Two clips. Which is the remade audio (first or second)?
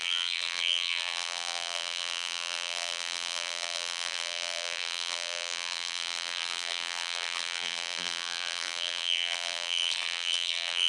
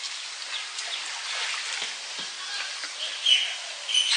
first